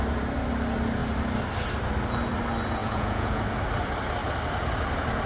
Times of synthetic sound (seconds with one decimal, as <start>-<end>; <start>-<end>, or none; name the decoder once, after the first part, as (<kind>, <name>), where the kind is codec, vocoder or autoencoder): 2.8-3.4 (vocoder, Vocos)

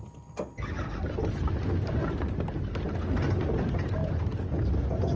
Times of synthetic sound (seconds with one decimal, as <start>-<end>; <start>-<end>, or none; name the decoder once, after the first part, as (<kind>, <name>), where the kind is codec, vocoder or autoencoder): none

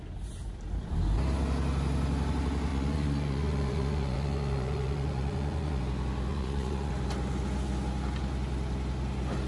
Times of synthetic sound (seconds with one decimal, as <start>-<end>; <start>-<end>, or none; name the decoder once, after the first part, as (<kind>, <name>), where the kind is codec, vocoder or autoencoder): 2.7-5.8 (vocoder, Vocos); 6.3-6.9

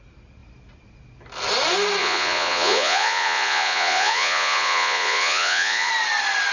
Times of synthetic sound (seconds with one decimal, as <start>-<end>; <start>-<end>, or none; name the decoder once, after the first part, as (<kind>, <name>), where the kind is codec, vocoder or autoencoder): 2.0-5.9 (vocoder, Vocos)

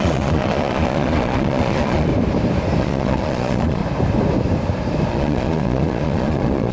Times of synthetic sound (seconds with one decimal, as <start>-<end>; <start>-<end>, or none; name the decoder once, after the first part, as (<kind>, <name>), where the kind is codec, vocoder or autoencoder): 0.0-2.1 (vocoder, Vocos); 2.8-3.8; 5.1-6.7

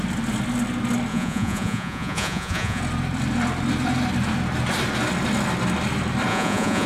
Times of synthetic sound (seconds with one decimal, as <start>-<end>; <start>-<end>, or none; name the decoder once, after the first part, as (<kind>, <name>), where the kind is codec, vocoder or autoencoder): 1.1-2.8 (vocoder, Vocos); 6.3-6.9

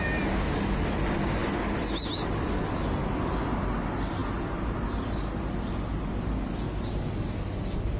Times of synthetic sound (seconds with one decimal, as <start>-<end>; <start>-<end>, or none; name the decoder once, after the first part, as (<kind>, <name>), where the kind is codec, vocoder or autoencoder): none